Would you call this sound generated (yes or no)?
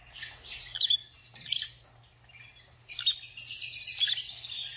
no